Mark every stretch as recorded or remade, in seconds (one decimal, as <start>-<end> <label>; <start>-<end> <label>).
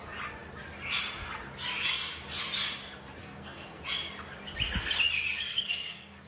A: 0.0-3.2 recorded; 3.2-3.8 remade; 3.8-5.5 recorded; 5.5-6.3 remade